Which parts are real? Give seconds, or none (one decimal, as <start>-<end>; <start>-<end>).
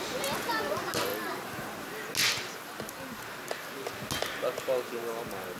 0.0-5.6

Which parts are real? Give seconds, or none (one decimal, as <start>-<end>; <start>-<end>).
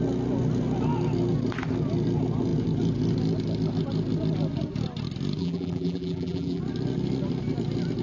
0.0-5.4; 6.6-8.0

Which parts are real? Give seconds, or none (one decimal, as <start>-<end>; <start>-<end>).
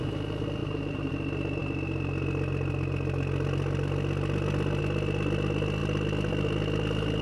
0.0-0.6; 1.1-7.2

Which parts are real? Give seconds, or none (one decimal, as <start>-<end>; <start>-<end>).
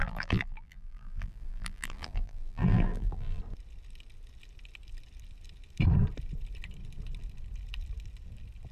3.4-8.7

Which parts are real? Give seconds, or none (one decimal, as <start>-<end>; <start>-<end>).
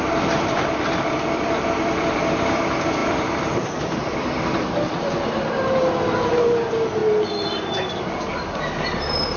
none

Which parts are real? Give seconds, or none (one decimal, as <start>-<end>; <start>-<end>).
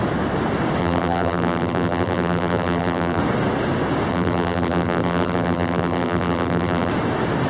0.0-0.8; 3.2-4.1; 6.9-7.5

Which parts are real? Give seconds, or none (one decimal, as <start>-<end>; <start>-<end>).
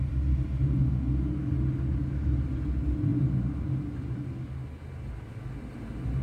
0.0-6.2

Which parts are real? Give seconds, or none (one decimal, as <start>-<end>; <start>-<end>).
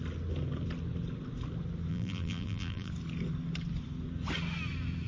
0.0-1.9; 2.9-5.1